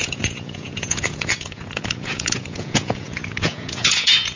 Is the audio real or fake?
fake